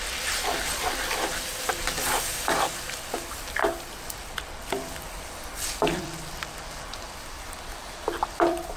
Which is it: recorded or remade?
remade